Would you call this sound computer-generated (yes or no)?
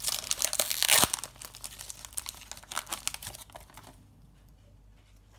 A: no